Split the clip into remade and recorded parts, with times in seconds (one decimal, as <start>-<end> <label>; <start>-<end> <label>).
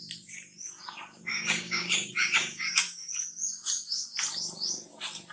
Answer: 0.0-1.3 recorded; 1.3-3.1 remade; 3.1-5.3 recorded